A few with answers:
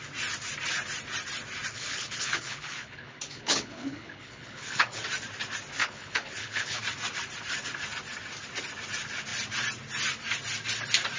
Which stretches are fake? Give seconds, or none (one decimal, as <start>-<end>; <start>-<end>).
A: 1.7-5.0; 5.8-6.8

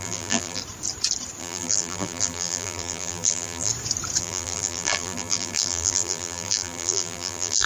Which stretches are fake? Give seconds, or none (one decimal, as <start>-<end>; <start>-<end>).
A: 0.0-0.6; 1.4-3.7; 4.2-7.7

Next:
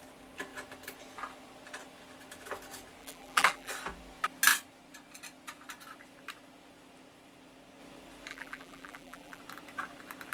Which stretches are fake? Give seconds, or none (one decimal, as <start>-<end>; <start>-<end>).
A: 3.0-3.7; 8.3-9.4

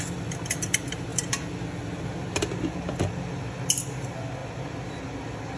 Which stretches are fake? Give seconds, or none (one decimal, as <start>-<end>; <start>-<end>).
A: none

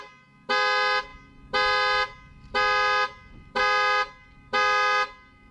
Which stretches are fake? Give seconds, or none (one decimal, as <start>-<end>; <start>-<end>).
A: none

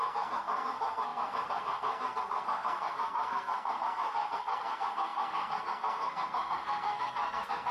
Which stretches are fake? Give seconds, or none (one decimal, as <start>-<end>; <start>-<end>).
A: 0.0-7.7